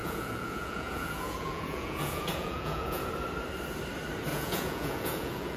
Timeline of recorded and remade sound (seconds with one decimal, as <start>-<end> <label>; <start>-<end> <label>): 0.0-3.0 remade; 3.0-4.3 recorded; 4.3-5.6 remade